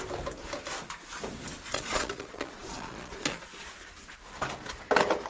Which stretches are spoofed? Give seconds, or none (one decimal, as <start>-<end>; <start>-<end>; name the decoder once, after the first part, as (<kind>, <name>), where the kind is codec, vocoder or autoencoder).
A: 1.7-3.6 (vocoder, Vocos)